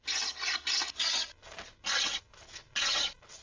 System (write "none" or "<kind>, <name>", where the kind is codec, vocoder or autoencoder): none